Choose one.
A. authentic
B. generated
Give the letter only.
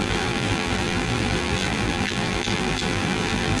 B